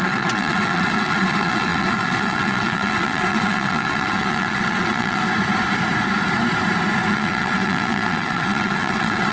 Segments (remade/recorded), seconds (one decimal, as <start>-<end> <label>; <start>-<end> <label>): 0.0-5.2 remade; 5.2-7.1 recorded; 7.1-9.3 remade